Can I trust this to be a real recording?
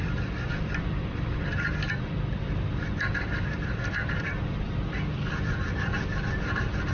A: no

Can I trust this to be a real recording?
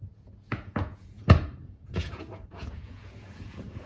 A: no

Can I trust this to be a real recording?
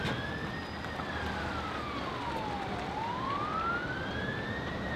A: yes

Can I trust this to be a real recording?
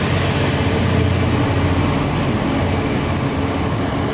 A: yes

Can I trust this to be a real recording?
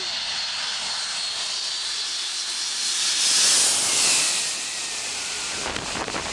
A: yes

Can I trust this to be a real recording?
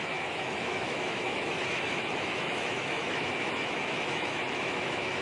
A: no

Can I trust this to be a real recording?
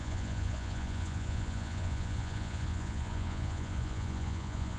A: no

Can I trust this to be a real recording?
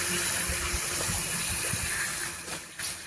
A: yes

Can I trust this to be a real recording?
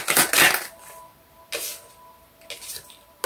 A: yes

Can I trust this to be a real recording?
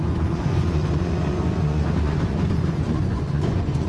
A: no